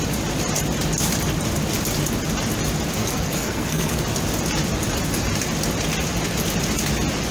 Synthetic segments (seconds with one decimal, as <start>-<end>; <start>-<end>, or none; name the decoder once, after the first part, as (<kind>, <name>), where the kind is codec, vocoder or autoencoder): 3.0-4.0 (codec, SNAC)